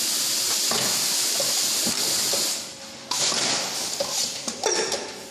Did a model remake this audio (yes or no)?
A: no